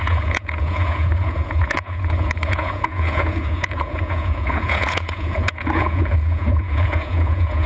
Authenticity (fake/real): fake